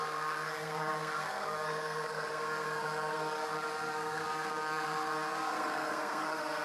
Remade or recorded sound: remade